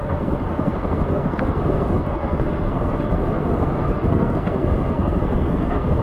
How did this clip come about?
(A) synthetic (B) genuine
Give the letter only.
A